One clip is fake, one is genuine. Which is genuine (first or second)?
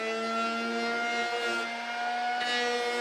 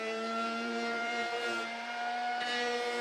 first